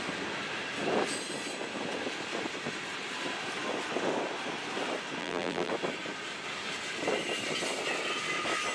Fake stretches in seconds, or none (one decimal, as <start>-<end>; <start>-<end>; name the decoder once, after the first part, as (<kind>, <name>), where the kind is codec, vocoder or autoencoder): 5.2-5.7 (vocoder, BigVGAN v2)